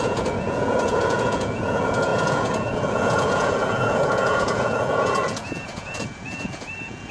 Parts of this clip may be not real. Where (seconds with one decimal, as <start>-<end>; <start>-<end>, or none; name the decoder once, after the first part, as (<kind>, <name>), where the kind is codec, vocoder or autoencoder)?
0.0-7.1 (vocoder, Vocos)